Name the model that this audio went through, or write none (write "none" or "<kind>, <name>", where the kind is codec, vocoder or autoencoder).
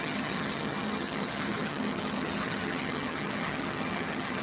vocoder, HiFi-GAN